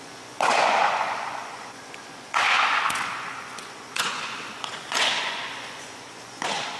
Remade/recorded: remade